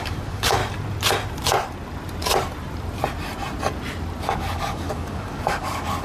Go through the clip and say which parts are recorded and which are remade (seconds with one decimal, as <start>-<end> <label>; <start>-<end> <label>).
0.0-0.6 remade; 0.6-4.2 recorded; 4.2-6.0 remade